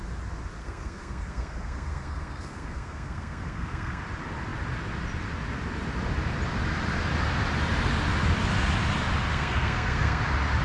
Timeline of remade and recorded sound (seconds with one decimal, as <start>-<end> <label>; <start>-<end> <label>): 0.0-0.6 recorded; 0.6-4.0 remade; 4.0-9.3 recorded; 9.3-10.2 remade; 10.2-10.6 recorded

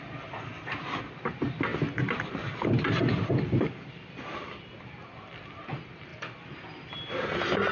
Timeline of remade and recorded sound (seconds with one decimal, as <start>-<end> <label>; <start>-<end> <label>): 0.0-1.7 recorded; 1.7-5.6 remade; 5.6-6.1 recorded; 6.1-7.1 remade; 7.1-7.7 recorded

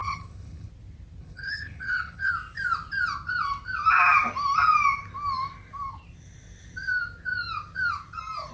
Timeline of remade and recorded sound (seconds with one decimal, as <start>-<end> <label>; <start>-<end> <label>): 0.0-0.7 remade; 0.7-1.2 recorded; 1.2-2.3 remade; 2.3-8.5 recorded